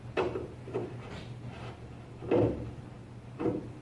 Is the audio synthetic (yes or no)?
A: no